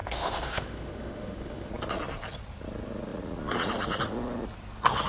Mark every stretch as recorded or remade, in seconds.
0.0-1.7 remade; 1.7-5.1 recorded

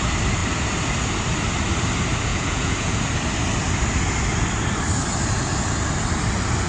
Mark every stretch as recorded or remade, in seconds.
0.0-2.3 recorded; 2.3-3.0 remade; 3.0-6.7 recorded

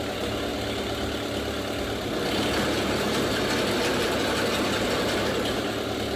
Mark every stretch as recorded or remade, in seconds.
0.0-6.2 recorded

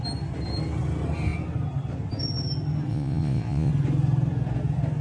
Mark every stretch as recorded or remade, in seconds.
0.0-2.9 recorded; 2.9-3.7 remade; 3.7-5.0 recorded